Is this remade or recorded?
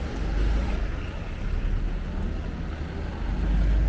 recorded